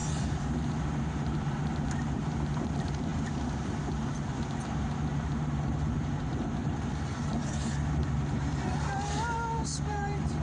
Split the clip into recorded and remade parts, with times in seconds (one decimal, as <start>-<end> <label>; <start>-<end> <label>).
0.0-10.4 remade